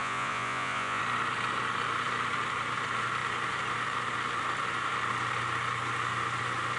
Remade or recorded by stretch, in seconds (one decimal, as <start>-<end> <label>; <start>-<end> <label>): 0.0-1.0 remade; 1.0-6.8 recorded